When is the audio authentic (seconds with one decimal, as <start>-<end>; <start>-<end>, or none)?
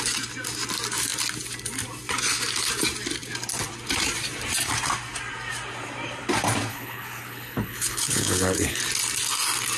0.0-6.7; 8.8-9.8